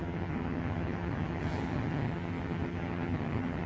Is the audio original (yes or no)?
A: no